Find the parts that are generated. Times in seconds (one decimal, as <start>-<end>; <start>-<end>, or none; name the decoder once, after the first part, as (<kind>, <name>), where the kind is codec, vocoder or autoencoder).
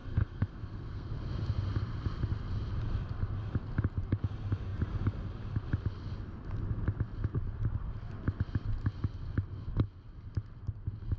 0.0-1.1 (codec, SNAC)